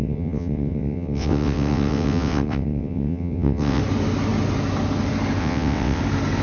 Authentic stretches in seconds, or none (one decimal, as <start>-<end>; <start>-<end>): 3.8-5.4; 6.0-6.4